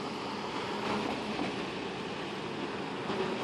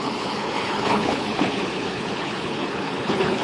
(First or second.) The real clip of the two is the first